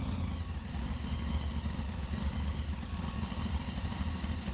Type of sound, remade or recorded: recorded